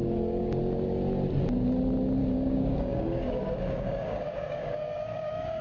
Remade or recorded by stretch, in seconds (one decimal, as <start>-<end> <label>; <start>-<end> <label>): 0.0-0.6 remade; 0.6-2.2 recorded; 2.2-5.6 remade